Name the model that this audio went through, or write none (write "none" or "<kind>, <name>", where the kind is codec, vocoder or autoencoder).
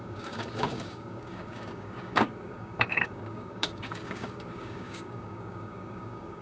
codec, DAC